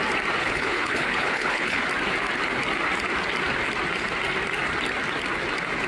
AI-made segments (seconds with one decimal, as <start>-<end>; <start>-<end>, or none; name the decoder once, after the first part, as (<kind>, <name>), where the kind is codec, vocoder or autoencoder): 0.4-1.8 (codec, HILCodec)